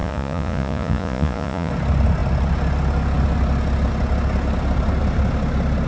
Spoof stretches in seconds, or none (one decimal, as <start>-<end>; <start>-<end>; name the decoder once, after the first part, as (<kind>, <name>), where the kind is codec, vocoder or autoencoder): 0.0-1.7 (vocoder, Vocos)